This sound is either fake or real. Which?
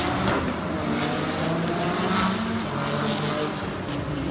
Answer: real